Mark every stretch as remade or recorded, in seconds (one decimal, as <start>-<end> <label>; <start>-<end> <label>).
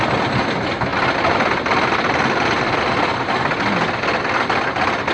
0.0-0.9 recorded; 0.9-2.8 remade; 2.8-5.1 recorded